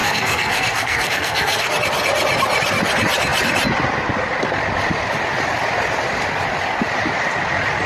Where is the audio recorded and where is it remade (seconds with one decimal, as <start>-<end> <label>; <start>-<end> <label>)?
0.0-1.7 remade; 1.7-7.9 recorded